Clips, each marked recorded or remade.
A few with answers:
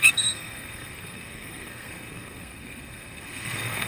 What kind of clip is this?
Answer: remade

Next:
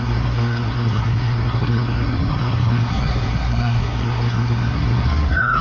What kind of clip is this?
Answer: remade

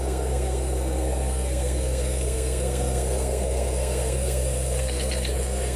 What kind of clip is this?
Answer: remade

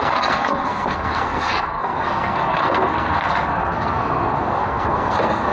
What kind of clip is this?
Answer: remade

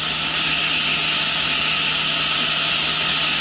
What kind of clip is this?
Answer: recorded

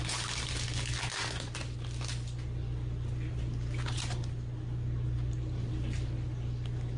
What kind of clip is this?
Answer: recorded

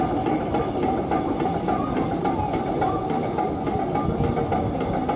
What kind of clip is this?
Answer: recorded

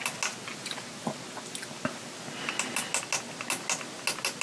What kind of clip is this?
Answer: recorded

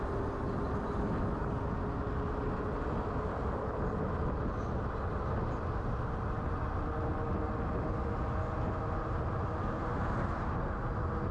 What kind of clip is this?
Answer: recorded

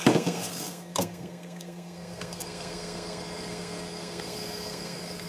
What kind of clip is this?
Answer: remade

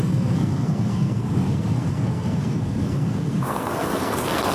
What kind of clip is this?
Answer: remade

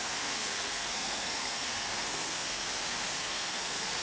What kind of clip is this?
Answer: remade